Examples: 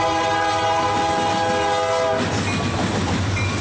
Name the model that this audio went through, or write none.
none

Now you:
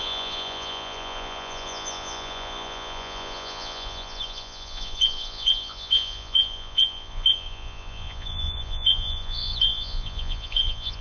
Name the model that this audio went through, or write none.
vocoder, Vocos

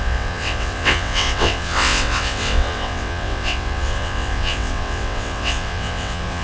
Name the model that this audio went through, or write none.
vocoder, WaveNeXt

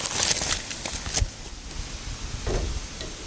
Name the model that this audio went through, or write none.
none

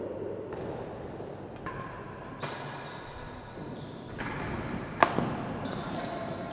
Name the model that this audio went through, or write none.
none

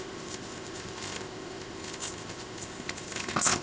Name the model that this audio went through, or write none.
codec, ZipCodec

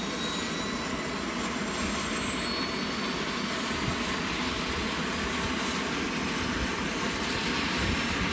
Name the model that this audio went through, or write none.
none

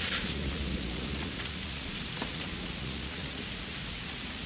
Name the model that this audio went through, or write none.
vocoder, Vocos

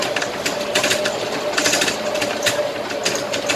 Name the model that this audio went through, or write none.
none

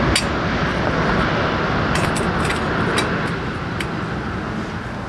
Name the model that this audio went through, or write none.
none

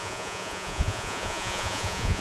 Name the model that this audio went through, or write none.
vocoder, Vocos